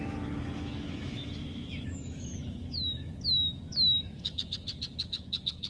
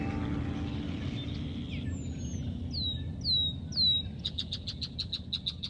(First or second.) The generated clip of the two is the first